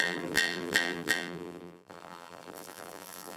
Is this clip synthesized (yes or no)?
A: yes